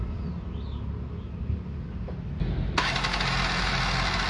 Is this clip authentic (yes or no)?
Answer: yes